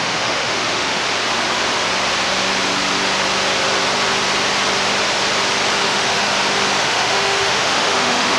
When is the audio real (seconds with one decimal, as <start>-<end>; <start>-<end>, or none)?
1.0-5.8; 6.3-6.8